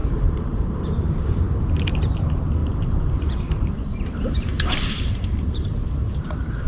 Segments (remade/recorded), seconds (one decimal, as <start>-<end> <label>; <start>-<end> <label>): 0.0-0.8 remade; 0.8-2.6 recorded; 2.6-6.7 remade